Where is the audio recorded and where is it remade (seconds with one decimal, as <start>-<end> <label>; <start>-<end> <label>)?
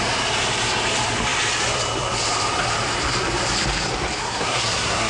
0.0-4.2 recorded; 4.2-5.1 remade